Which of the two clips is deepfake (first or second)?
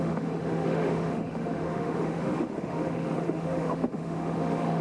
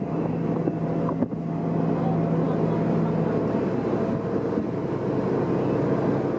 first